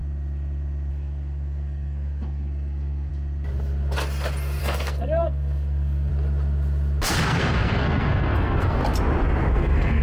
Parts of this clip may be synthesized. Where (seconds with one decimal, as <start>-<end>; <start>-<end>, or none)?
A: 0.9-3.1; 4.6-6.1; 7.1-8.8; 9.5-10.0

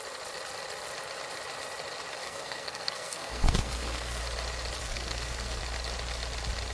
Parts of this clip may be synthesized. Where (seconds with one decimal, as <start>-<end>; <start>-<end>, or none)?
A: 2.2-4.2; 4.8-5.6

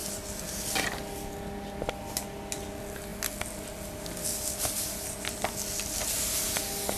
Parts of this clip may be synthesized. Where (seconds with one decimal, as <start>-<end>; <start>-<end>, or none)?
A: none

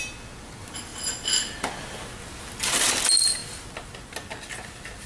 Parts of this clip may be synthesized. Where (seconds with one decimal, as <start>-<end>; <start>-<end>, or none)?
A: none

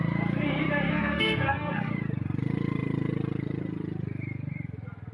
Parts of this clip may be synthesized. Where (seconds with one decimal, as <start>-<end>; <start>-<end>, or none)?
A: 0.9-1.9